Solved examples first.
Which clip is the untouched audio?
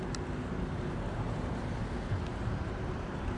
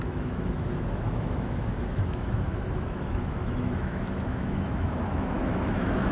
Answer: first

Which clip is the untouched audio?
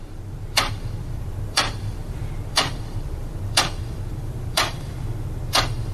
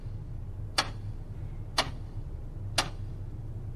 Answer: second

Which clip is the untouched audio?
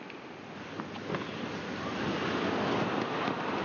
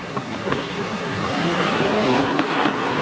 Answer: first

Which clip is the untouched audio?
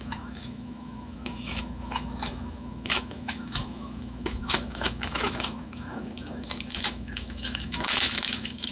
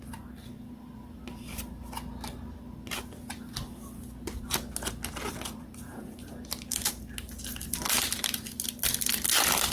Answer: second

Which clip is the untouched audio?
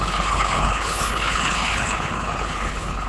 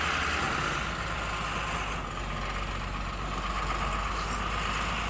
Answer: second